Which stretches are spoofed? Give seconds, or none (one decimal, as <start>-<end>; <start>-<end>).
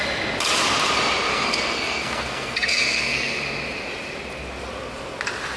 1.3-3.4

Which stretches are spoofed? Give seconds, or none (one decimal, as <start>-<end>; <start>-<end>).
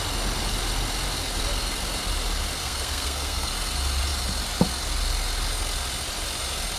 2.6-3.5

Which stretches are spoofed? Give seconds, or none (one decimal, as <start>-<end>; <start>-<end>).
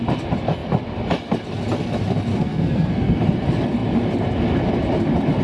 2.3-3.2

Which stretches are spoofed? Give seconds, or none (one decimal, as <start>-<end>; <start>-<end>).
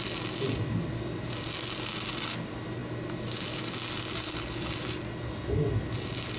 none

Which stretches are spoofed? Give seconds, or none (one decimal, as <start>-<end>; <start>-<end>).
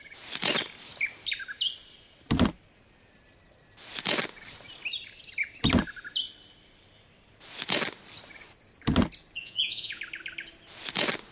9.4-10.0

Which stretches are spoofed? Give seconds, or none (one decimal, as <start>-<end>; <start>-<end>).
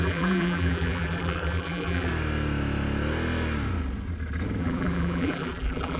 0.0-2.1; 4.6-6.0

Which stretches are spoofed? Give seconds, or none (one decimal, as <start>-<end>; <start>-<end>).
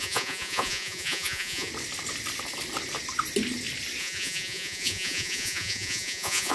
0.0-1.7; 4.0-6.5